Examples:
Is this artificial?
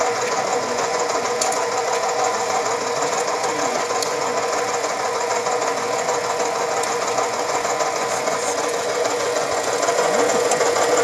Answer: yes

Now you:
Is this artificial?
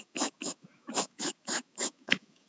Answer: yes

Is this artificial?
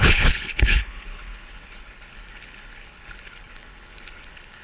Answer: yes